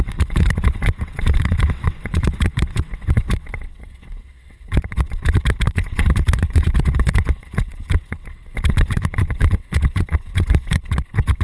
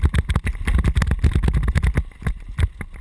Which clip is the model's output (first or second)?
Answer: first